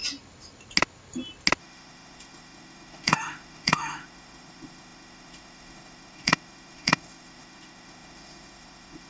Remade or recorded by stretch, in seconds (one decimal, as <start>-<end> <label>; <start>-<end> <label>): 0.0-1.6 recorded; 1.6-9.1 remade